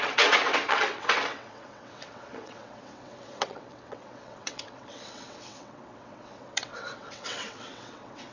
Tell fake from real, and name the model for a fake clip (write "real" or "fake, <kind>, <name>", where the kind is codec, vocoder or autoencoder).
fake, vocoder, WaveNeXt